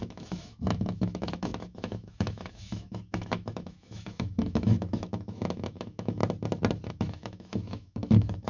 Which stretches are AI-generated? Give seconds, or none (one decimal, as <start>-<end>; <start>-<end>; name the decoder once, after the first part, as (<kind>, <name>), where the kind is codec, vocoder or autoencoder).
0.0-6.2 (autoencoder, DAC-VAE); 6.9-8.5